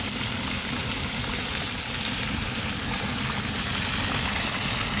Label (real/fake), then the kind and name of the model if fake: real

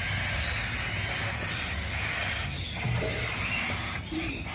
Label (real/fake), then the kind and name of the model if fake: real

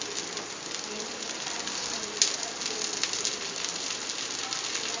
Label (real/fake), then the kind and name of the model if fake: real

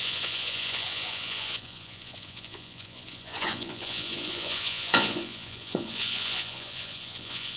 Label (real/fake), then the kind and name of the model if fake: fake, vocoder, Vocos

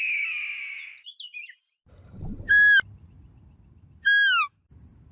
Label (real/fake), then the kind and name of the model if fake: real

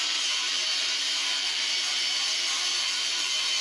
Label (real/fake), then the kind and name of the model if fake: fake, vocoder, BigVGAN v2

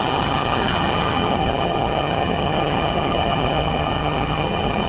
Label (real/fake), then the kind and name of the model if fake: fake, vocoder, HiFi-GAN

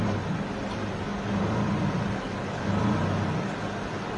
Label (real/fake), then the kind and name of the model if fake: real